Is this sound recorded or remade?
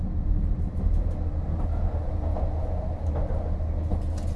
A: recorded